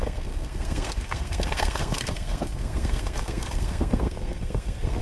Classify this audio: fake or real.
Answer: fake